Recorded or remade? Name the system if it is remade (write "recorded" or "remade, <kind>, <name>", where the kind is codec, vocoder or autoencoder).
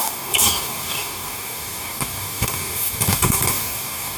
remade, codec, DAC